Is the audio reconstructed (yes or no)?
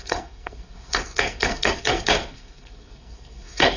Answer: yes